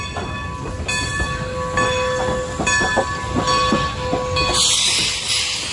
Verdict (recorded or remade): recorded